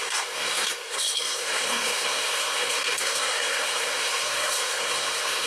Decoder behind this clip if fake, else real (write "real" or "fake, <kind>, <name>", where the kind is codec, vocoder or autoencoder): fake, codec, SNAC